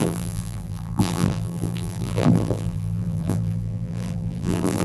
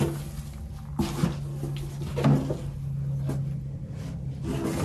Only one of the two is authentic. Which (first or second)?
second